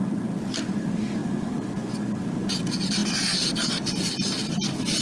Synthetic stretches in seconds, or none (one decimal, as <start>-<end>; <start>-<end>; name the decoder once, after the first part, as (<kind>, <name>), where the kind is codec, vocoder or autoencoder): 1.2-2.0 (vocoder, Vocos)